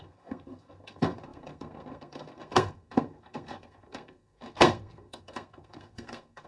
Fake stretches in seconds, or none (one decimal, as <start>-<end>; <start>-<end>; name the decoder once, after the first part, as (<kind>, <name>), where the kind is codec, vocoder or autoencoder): 0.0-6.5 (codec, SNAC)